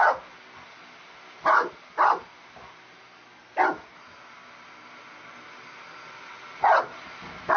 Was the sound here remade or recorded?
recorded